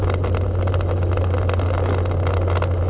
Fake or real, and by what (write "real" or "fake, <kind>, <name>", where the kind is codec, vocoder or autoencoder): real